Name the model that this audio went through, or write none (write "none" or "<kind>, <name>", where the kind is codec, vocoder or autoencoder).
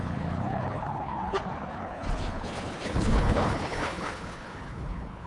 codec, HILCodec